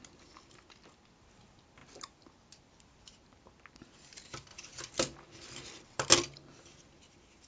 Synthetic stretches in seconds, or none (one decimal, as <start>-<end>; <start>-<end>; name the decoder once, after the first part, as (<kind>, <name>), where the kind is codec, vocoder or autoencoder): none